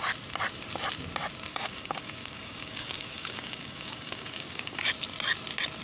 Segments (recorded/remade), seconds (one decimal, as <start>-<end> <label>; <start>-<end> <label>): 0.0-1.5 recorded; 1.5-4.8 remade; 4.8-5.8 recorded